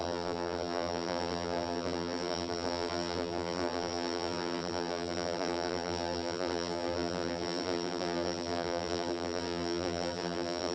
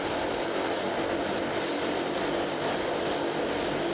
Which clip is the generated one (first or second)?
first